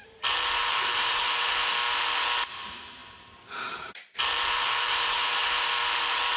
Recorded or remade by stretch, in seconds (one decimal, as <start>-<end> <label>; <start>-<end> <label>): 0.0-1.7 remade; 1.7-2.5 recorded; 2.5-6.4 remade